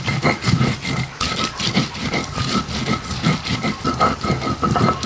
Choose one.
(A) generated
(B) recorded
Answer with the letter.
B